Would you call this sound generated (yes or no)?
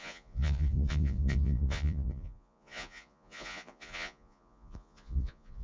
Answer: yes